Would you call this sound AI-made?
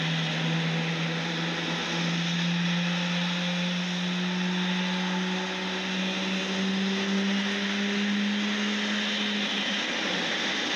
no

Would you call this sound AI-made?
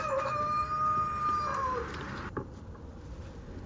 no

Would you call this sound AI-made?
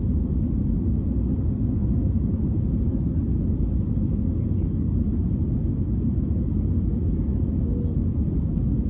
no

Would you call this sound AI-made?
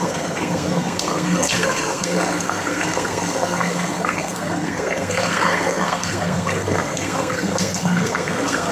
yes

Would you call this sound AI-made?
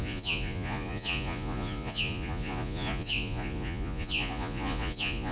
yes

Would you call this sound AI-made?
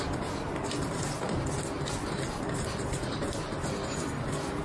no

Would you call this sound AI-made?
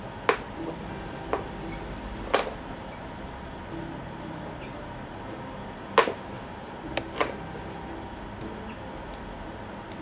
no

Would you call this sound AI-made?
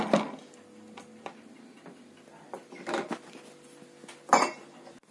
no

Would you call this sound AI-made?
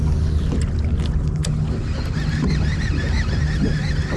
no